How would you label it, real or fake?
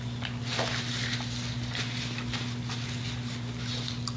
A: real